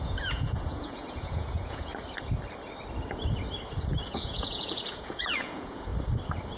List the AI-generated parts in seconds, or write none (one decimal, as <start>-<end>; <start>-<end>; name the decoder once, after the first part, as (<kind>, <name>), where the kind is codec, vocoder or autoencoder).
0.0-1.9 (vocoder, Vocos); 4.1-5.9